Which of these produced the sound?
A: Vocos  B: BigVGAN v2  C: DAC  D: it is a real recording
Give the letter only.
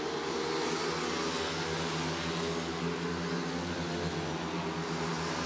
D